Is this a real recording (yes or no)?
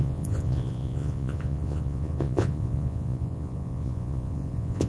no